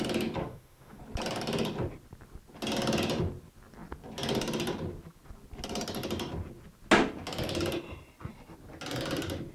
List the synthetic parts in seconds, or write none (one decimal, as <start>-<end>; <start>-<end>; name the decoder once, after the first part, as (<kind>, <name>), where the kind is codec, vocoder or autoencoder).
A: 0.4-1.0 (autoencoder, DAC-VAE)